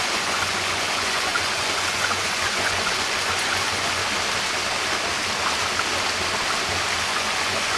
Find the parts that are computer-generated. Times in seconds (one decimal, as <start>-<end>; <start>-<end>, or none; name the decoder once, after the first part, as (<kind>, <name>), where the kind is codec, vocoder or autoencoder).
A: 0.0-4.0 (vocoder, Vocos); 7.0-7.8